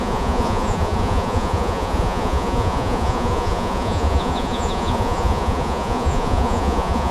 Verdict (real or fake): fake